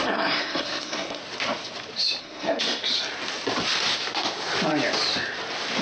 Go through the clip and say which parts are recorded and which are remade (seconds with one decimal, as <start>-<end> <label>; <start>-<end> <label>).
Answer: 0.0-1.2 remade; 1.2-2.2 recorded; 2.2-2.8 remade; 2.8-5.8 recorded